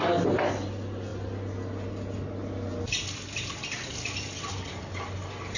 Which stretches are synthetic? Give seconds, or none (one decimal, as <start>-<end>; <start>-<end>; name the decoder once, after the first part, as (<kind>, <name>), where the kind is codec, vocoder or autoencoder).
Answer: none

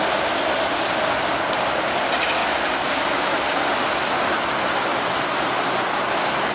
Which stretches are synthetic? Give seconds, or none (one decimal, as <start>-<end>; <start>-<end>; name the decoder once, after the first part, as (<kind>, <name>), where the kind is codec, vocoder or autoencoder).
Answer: 2.4-3.1 (vocoder, BigVGAN v2); 4.9-5.7

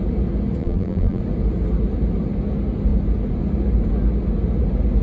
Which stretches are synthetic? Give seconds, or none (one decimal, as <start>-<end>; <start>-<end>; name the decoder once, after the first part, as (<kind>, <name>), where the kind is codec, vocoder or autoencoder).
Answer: 0.6-1.2 (vocoder, BigVGAN v2)

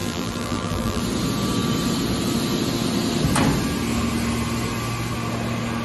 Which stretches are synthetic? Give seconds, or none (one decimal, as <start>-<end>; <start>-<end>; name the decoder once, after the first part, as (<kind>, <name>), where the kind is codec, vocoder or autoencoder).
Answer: 0.0-1.0 (vocoder, BigVGAN v2)

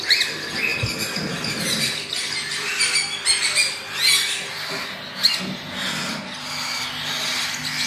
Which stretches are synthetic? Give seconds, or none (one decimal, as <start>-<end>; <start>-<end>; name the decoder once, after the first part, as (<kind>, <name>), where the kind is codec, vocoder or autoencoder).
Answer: none

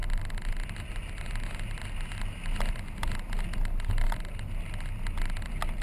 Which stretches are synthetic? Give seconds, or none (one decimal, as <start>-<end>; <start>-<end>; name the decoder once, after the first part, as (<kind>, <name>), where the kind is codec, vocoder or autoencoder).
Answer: none